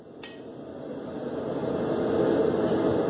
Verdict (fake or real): real